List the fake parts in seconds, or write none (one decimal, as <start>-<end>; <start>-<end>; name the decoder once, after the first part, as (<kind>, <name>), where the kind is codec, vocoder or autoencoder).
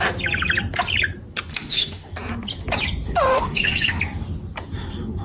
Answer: 1.5-2.1 (autoencoder, DAC-VAE); 3.3-4.0